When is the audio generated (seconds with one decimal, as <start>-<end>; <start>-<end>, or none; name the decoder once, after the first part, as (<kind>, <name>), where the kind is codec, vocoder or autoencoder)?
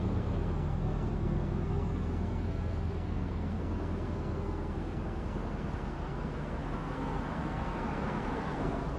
0.0-9.0 (codec, SNAC)